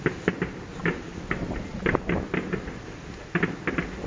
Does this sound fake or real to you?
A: real